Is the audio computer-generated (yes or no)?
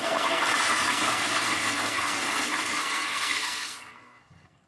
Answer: yes